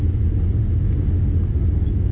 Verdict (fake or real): real